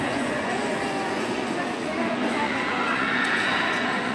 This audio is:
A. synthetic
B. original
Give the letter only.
A